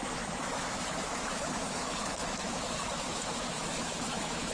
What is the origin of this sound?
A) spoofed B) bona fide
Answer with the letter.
A